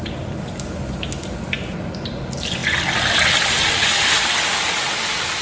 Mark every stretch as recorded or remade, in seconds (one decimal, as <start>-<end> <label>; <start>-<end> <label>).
0.0-5.4 recorded